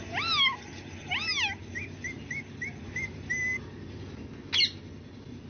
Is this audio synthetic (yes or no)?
no